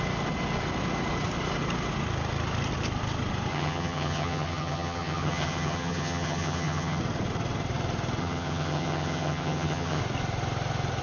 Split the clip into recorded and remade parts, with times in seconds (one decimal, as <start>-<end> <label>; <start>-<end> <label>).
0.0-3.5 recorded; 3.5-7.0 remade; 7.0-8.2 recorded; 8.2-10.0 remade; 10.0-11.0 recorded